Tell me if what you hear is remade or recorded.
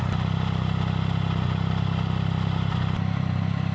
recorded